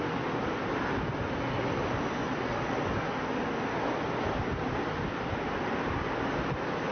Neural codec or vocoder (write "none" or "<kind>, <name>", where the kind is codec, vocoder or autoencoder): none